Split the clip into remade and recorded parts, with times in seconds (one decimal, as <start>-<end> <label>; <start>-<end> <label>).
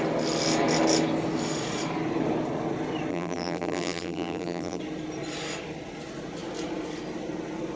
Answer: 0.0-3.1 recorded; 3.1-4.8 remade; 4.8-7.8 recorded